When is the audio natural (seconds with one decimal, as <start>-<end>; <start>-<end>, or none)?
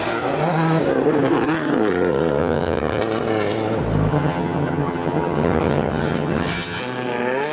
0.0-2.4; 3.0-4.1; 6.8-7.5